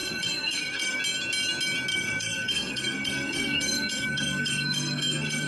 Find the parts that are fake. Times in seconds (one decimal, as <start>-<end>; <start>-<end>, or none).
0.0-1.0; 1.9-5.5